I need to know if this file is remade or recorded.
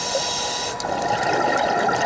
recorded